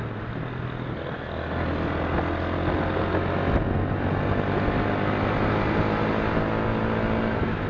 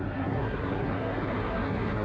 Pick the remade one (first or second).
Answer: second